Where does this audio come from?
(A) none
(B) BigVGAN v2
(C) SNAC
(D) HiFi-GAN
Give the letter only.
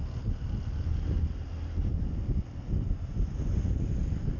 A